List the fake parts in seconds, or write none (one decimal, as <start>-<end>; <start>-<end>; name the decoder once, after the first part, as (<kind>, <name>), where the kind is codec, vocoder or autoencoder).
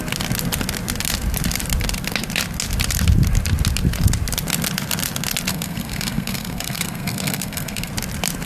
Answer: 5.5-7.9 (codec, SNAC)